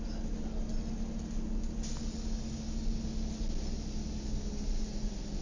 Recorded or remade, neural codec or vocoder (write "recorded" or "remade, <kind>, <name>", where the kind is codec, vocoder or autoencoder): recorded